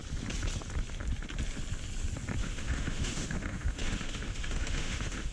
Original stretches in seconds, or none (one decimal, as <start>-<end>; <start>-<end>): 0.0-2.4